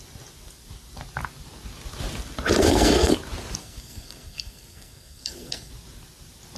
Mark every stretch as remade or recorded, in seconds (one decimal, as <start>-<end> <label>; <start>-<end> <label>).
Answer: 0.0-2.6 recorded; 2.6-3.1 remade; 3.1-3.6 recorded; 3.6-5.7 remade; 5.7-6.6 recorded